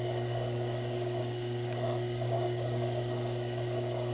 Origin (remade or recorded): remade